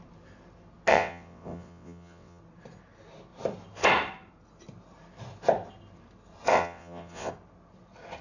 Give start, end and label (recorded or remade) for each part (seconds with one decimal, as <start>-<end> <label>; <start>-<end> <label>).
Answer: 0.0-0.9 recorded; 0.9-2.4 remade; 2.4-6.5 recorded; 6.5-7.3 remade; 7.3-8.2 recorded